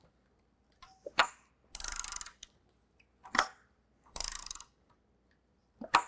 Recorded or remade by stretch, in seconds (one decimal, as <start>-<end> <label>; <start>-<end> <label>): 0.0-1.2 remade; 1.2-4.7 recorded; 4.7-6.1 remade